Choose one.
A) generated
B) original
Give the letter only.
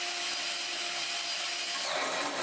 B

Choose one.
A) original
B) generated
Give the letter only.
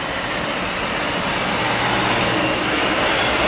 A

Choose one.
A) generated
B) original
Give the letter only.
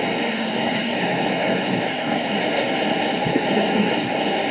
A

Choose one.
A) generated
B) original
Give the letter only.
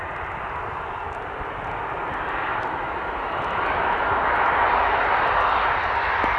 B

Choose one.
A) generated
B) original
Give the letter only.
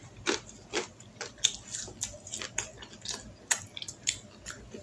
B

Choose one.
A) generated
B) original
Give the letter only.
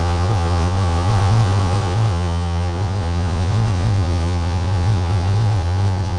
A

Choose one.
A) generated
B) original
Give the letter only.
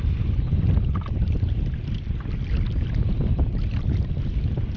B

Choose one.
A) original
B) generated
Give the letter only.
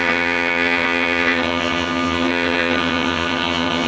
B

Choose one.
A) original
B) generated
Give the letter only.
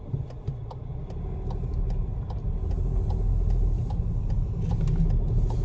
A